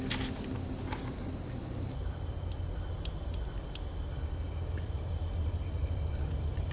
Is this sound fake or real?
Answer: real